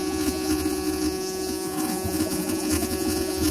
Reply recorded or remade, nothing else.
remade